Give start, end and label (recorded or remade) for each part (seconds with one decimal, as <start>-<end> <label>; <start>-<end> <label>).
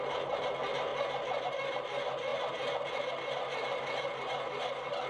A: 0.0-5.1 recorded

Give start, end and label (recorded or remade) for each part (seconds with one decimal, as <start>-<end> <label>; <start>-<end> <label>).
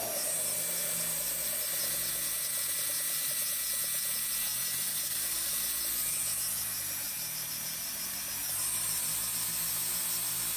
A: 0.0-4.9 recorded; 4.9-5.5 remade; 5.5-10.6 recorded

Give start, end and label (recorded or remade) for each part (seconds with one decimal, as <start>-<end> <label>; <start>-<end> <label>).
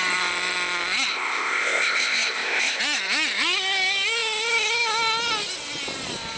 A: 0.0-1.1 recorded; 1.1-2.8 remade; 2.8-6.4 recorded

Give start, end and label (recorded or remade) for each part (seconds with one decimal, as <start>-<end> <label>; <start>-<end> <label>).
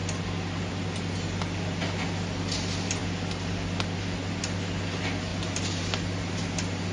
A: 0.0-6.9 recorded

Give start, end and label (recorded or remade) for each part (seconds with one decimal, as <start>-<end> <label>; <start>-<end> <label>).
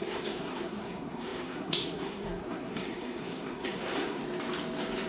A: 0.0-4.2 remade; 4.2-5.1 recorded